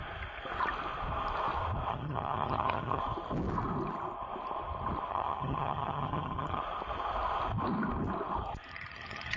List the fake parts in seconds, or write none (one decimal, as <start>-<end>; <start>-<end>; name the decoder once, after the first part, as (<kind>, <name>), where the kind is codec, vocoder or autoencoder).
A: 1.9-3.0 (vocoder, HiFi-GAN); 5.1-6.6; 8.7-9.4